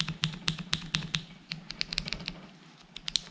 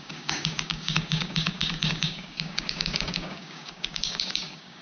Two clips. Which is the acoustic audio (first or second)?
first